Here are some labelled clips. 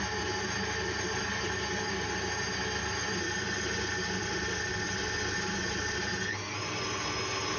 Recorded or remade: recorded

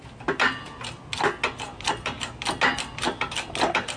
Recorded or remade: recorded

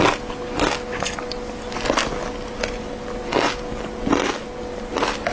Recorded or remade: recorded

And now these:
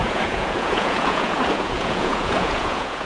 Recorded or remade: remade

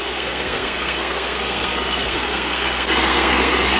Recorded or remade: remade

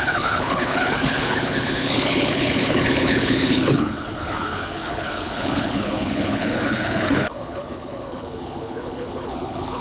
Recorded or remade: remade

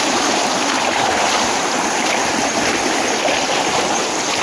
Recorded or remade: recorded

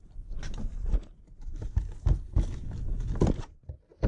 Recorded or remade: recorded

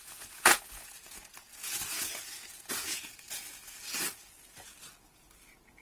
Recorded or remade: remade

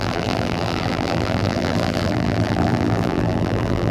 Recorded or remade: remade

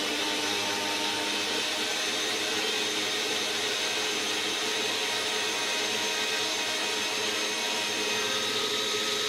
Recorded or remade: recorded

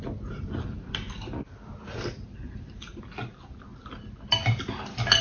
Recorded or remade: recorded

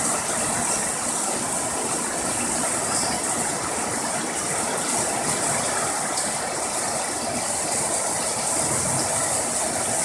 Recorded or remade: recorded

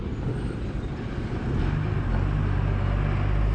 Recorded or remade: recorded